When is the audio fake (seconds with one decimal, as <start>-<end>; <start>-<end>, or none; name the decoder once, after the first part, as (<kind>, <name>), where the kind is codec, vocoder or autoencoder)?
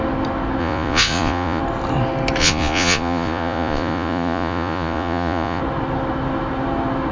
0.6-1.6 (vocoder, Vocos); 2.4-5.6